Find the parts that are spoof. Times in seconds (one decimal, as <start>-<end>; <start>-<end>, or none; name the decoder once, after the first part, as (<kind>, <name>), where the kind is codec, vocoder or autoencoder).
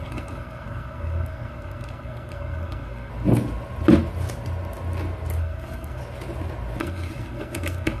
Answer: 0.0-3.1 (codec, SNAC); 5.4-6.0; 6.8-8.0